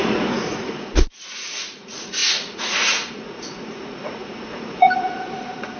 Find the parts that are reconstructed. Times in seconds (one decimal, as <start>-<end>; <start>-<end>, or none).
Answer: 0.0-5.8